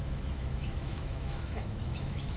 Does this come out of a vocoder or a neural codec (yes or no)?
yes